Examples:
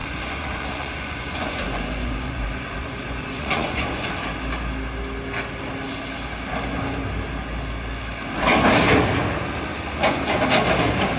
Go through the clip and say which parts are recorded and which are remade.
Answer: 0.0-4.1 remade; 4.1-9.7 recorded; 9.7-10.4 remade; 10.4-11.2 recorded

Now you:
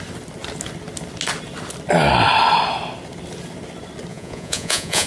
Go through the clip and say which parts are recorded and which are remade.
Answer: 0.0-4.1 recorded; 4.1-5.1 remade